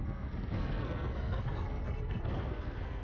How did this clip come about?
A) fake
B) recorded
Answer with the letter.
A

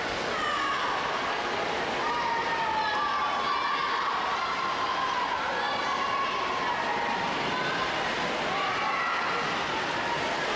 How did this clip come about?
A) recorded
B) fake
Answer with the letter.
A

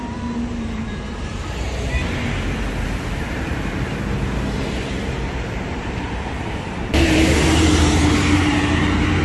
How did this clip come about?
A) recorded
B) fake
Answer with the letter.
B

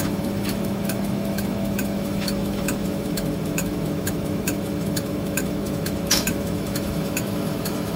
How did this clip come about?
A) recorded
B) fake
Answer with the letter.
B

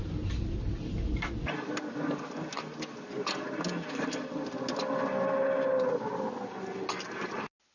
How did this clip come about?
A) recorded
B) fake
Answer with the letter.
A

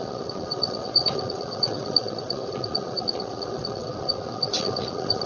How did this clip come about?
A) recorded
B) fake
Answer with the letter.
B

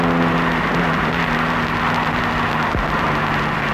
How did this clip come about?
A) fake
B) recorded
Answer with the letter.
B